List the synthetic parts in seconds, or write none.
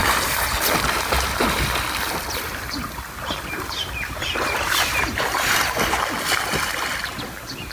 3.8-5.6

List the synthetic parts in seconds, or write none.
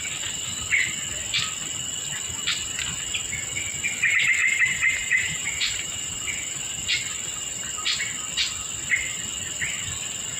4.4-6.2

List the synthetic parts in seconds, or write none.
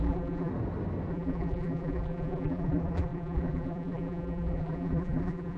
0.0-0.5; 1.1-5.6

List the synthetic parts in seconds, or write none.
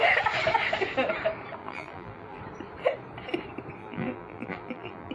1.6-2.4; 3.8-5.1